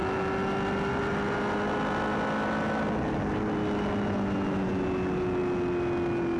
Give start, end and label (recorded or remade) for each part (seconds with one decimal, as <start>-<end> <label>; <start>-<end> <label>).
0.0-6.4 recorded